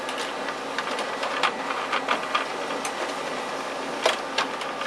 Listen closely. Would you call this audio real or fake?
real